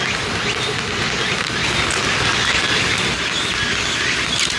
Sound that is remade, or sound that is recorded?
recorded